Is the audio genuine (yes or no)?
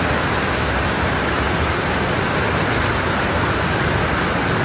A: yes